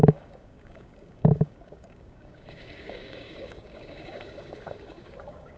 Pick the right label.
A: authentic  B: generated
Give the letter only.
B